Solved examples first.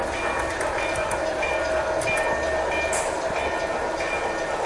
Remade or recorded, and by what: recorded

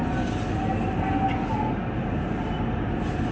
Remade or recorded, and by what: recorded